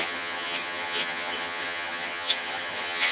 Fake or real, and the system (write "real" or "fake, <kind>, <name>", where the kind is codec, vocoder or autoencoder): fake, vocoder, HiFi-GAN